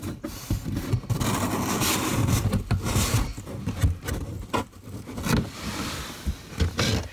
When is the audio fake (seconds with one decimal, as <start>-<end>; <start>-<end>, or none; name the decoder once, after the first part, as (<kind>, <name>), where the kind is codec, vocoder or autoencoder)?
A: 0.0-1.3 (vocoder, BigVGAN v2)